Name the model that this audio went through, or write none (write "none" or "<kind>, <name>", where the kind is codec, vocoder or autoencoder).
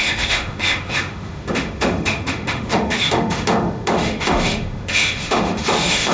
autoencoder, DAC-VAE